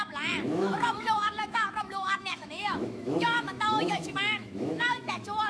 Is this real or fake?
fake